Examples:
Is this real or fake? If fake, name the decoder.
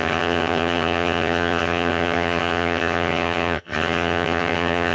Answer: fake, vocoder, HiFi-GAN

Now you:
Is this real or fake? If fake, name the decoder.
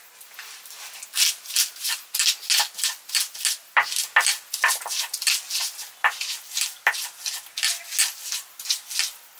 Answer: real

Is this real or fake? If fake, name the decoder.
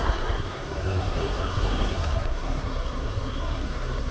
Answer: fake, codec, SNAC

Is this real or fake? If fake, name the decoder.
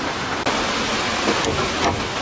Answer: real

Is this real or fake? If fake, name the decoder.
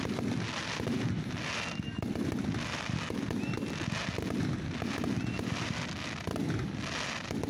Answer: real